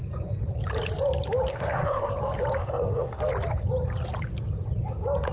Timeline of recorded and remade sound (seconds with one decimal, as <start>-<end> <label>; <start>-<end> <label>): 0.0-1.5 recorded; 1.5-2.1 remade; 2.1-2.6 recorded; 2.6-3.2 remade; 3.2-5.3 recorded